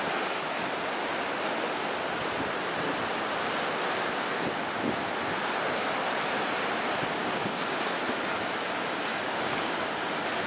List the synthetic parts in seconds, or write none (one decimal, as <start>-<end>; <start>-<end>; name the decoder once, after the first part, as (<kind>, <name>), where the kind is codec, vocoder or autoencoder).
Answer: 7.2-8.0 (codec, DAC); 9.1-9.7